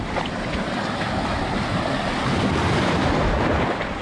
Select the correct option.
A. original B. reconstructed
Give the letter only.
A